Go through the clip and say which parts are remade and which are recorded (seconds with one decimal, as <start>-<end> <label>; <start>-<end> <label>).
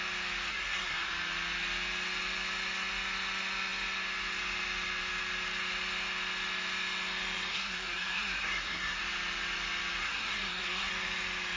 0.0-0.5 recorded; 0.5-1.1 remade; 1.1-7.5 recorded; 7.5-9.0 remade; 9.0-10.0 recorded; 10.0-10.9 remade; 10.9-11.6 recorded